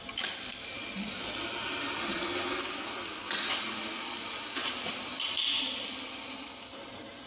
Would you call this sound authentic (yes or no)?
yes